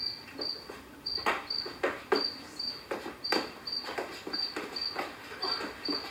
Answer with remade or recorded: recorded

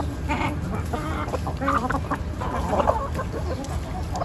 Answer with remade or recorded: recorded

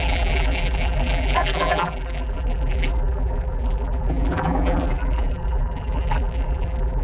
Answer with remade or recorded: remade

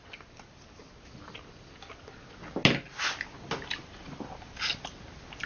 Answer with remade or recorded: recorded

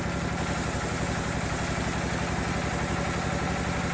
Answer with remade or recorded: recorded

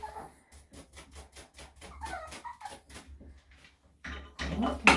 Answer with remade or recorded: recorded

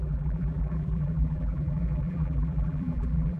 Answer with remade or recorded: remade